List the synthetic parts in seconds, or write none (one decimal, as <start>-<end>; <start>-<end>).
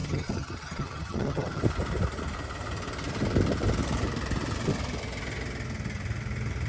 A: 0.0-1.6